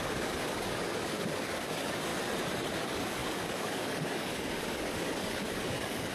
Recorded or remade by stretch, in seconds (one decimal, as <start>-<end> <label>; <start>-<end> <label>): 0.0-2.1 remade; 2.1-2.7 recorded; 2.7-6.1 remade

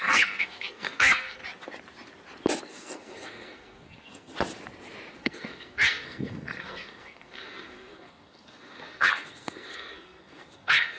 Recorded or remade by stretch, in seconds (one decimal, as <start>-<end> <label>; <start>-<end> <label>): 0.0-1.4 remade; 1.4-2.6 recorded; 2.6-4.3 remade; 4.3-5.1 recorded; 5.1-11.0 remade

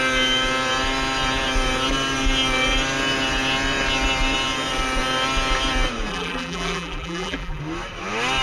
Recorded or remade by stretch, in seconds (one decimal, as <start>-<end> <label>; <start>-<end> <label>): 0.0-6.1 recorded; 6.1-7.6 remade; 7.6-8.4 recorded